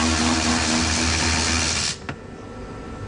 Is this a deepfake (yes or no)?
no